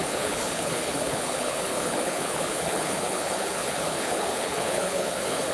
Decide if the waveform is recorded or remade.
remade